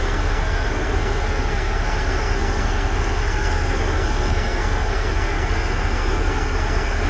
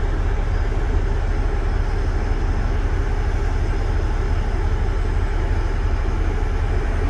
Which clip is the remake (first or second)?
first